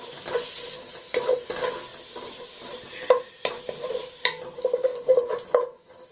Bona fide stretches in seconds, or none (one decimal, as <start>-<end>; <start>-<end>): 0.0-6.1